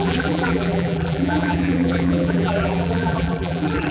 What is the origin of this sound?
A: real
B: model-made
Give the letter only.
B